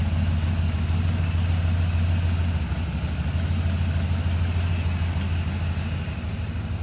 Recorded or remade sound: recorded